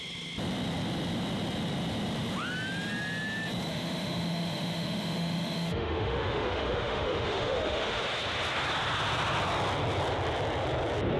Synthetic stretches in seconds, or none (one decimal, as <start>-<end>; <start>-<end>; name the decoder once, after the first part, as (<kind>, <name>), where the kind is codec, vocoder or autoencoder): 3.7-8.0 (autoencoder, DAC-VAE)